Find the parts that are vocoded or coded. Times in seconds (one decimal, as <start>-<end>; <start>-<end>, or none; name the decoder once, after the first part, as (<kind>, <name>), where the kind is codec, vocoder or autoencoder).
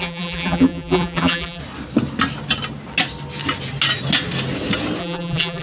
0.0-1.6 (vocoder, BigVGAN v2); 5.0-5.6